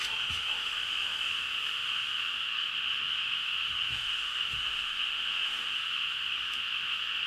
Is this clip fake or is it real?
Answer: fake